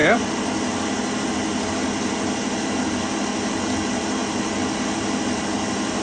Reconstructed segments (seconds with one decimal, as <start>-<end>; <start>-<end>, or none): none